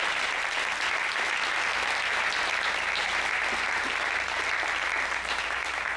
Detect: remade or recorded recorded